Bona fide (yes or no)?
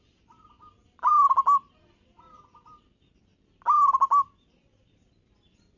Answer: yes